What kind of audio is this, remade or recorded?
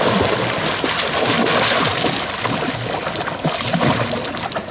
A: recorded